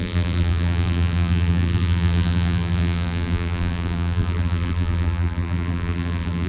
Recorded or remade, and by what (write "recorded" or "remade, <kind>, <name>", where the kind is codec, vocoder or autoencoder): remade, vocoder, BigVGAN v2